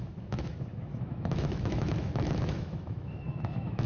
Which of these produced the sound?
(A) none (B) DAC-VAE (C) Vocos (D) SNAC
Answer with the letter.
B